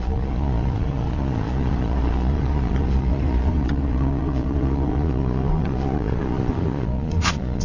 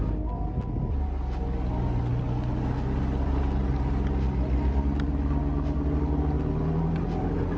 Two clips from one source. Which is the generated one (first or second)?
first